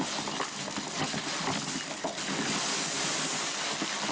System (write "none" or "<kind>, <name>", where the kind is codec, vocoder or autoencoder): none